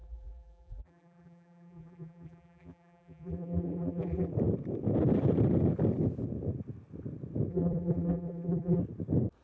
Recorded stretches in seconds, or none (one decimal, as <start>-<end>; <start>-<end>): 4.3-7.5; 8.8-9.4